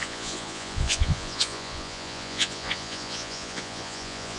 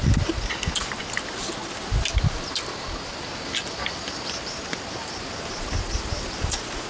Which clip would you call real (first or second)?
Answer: second